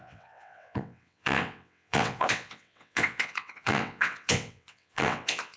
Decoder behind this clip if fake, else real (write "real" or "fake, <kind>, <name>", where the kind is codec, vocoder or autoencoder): fake, vocoder, WaveNeXt